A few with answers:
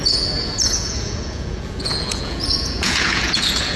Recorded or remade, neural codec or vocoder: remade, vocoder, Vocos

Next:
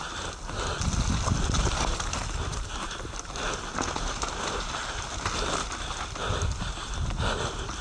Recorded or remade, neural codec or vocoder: recorded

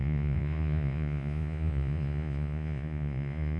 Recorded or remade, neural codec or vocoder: remade, vocoder, Vocos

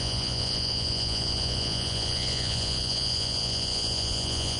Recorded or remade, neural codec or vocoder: remade, vocoder, Vocos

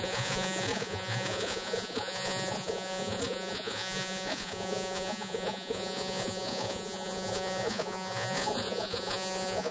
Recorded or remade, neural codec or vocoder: remade, vocoder, Vocos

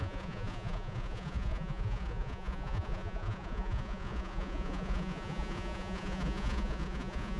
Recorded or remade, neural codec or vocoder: remade, vocoder, Vocos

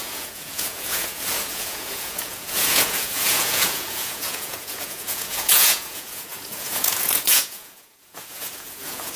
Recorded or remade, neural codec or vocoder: remade, vocoder, Vocos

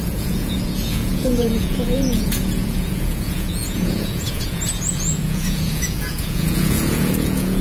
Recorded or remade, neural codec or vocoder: remade, vocoder, Vocos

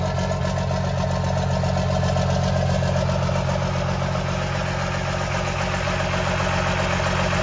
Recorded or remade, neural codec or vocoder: recorded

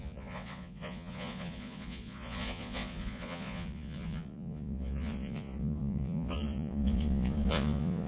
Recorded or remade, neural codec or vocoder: remade, vocoder, Vocos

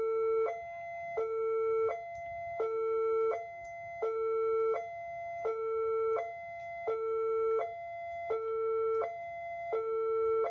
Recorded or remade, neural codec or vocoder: recorded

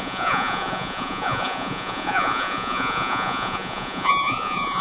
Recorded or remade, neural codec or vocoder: remade, vocoder, Vocos